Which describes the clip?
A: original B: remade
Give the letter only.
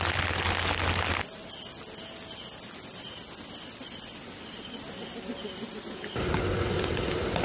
A